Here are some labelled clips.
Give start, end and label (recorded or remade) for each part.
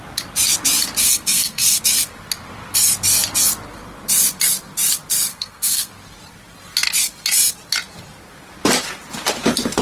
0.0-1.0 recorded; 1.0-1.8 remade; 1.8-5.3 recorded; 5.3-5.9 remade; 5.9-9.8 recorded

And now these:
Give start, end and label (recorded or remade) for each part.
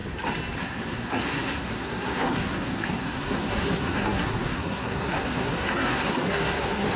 0.0-0.6 recorded; 0.6-7.0 remade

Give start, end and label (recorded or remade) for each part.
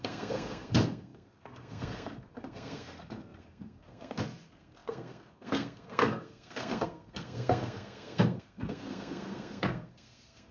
0.0-10.5 remade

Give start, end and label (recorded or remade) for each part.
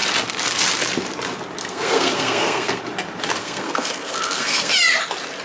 0.0-1.6 recorded; 1.6-2.8 remade; 2.8-3.4 recorded; 3.4-4.7 remade; 4.7-5.4 recorded